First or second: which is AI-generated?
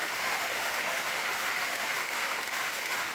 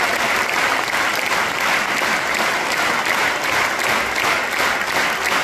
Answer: first